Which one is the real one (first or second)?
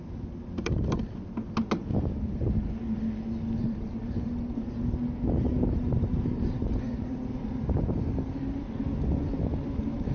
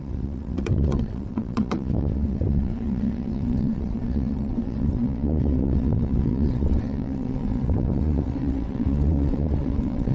first